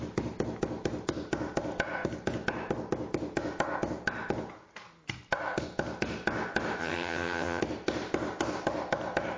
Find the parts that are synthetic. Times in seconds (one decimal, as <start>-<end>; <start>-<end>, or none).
6.8-7.6